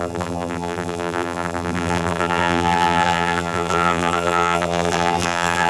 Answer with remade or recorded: remade